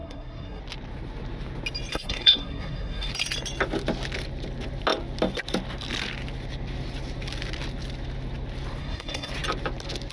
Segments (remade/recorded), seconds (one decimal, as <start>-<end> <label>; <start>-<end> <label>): 0.0-0.6 remade; 0.6-1.9 recorded; 1.9-3.1 remade; 3.1-8.8 recorded; 8.8-9.3 remade; 9.3-10.1 recorded